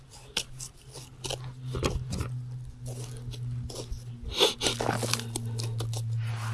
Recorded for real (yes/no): yes